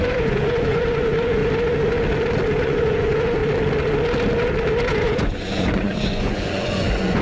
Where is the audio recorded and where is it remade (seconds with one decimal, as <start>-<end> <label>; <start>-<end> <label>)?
0.0-1.4 remade; 1.4-2.6 recorded; 2.6-3.4 remade; 3.4-4.9 recorded; 4.9-7.2 remade

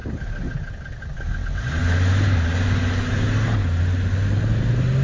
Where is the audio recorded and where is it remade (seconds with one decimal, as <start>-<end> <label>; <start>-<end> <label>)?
0.0-5.0 recorded

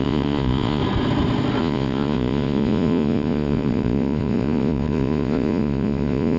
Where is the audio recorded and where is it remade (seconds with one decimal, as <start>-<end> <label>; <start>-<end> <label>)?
0.0-0.8 remade; 0.8-1.6 recorded; 1.6-6.4 remade